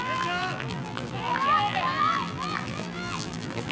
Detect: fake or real fake